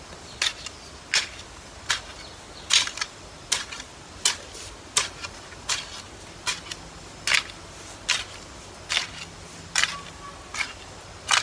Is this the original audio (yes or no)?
yes